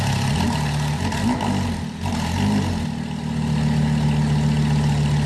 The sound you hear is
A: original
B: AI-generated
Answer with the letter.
A